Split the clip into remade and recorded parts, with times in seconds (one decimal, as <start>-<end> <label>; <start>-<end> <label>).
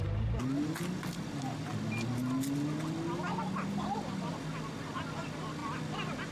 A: 0.0-6.3 recorded